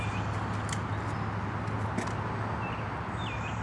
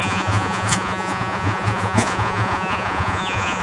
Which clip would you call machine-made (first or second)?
second